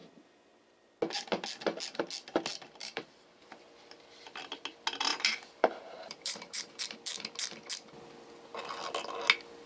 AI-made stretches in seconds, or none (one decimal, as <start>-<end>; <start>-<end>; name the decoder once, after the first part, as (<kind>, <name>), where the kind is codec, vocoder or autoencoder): 2.8-3.5 (vocoder, BigVGAN v2); 5.1-6.8